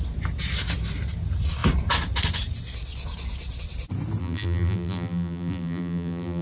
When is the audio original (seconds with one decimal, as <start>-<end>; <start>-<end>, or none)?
0.0-4.2